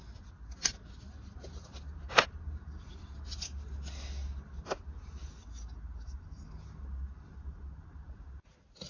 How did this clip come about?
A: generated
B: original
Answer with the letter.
B